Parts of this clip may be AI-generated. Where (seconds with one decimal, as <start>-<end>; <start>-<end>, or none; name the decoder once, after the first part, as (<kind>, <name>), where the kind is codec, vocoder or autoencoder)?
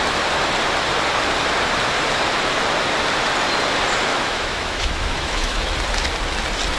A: 4.1-5.6 (autoencoder, DAC-VAE)